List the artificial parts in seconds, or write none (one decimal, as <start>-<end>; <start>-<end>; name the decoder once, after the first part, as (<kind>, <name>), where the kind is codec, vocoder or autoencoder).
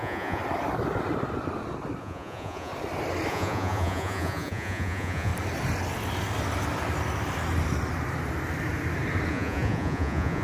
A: 0.0-0.4 (vocoder, Vocos); 2.0-2.7; 3.3-5.3; 9.3-10.4